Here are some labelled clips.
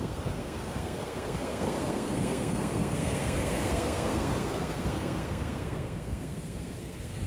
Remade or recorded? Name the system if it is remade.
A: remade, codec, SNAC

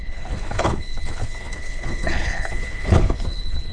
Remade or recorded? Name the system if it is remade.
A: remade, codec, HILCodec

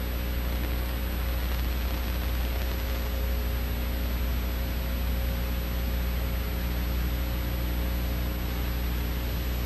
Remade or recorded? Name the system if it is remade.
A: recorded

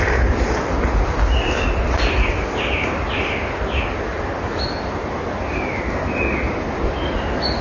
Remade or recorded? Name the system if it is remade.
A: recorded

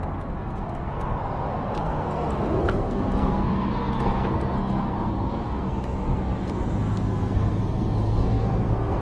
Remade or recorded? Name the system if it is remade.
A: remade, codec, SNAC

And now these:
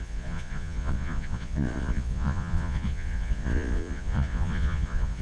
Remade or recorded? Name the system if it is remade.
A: remade, vocoder, Vocos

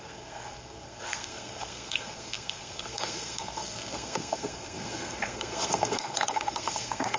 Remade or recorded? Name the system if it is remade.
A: remade, codec, SNAC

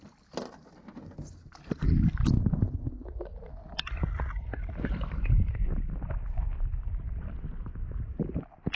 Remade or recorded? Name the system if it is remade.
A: recorded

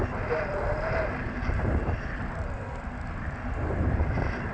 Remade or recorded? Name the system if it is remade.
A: recorded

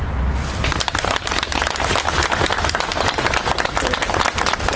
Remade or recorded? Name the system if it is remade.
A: recorded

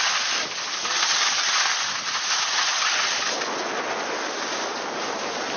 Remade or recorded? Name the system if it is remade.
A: recorded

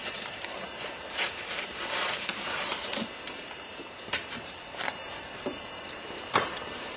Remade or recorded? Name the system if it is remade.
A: remade, vocoder, BigVGAN v2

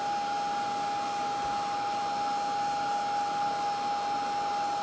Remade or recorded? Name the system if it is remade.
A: recorded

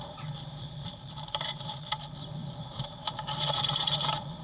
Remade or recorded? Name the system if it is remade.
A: remade, vocoder, BigVGAN v2